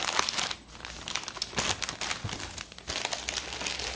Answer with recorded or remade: recorded